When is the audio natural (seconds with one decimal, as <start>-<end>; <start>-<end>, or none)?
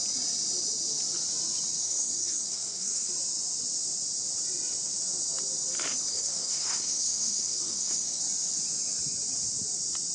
0.0-1.8; 3.1-6.1; 8.2-10.1